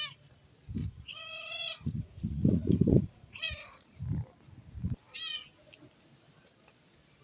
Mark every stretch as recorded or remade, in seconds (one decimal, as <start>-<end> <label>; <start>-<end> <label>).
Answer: 0.0-0.8 recorded; 0.8-4.0 remade; 4.0-7.2 recorded